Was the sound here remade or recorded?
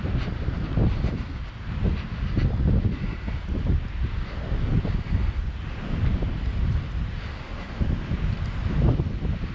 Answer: recorded